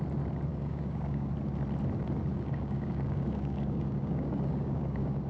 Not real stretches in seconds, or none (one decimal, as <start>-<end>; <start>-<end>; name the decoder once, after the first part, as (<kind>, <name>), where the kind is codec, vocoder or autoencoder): 0.5-1.3 (codec, DAC); 2.3-5.3